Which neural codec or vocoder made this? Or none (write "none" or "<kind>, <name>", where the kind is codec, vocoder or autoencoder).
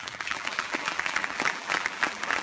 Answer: vocoder, BigVGAN v2